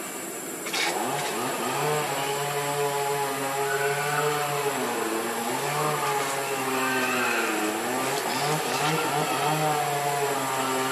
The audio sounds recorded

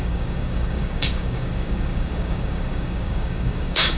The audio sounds remade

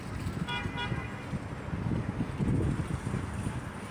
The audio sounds recorded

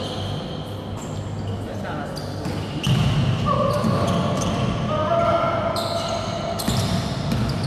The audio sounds recorded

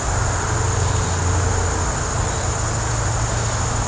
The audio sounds recorded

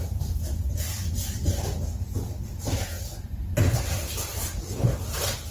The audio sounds recorded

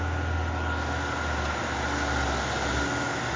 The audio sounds recorded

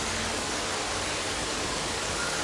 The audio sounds remade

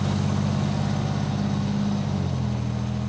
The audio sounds recorded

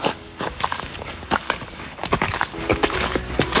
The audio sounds remade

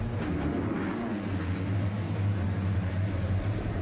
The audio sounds recorded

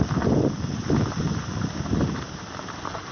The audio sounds recorded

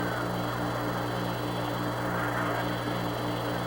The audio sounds recorded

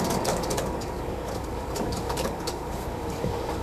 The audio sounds remade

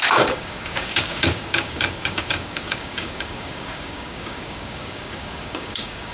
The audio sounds remade